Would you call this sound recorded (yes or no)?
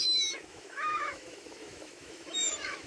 no